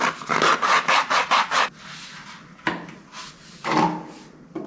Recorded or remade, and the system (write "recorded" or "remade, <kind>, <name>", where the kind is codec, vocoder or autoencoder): recorded